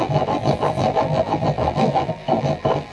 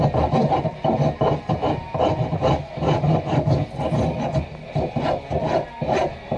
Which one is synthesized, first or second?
first